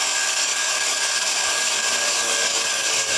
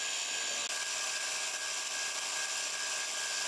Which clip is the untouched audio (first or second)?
second